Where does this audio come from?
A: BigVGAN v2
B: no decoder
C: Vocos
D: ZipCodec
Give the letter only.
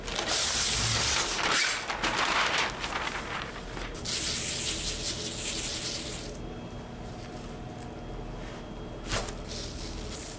B